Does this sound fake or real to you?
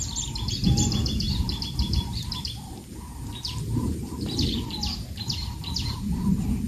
fake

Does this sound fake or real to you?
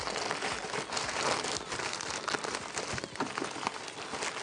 real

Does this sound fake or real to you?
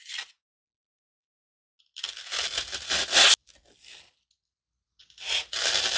real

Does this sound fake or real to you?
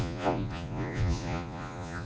fake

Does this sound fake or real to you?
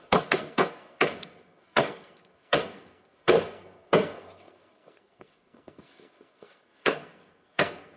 fake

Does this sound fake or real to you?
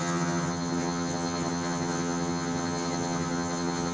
fake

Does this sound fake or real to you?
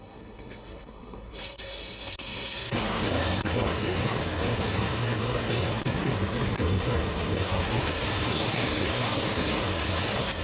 fake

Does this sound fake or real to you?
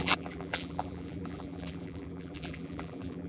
fake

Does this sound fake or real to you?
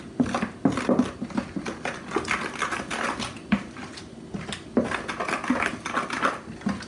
real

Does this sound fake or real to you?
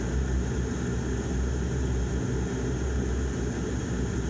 real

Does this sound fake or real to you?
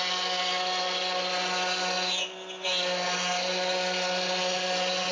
real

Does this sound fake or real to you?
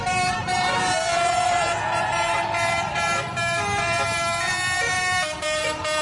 fake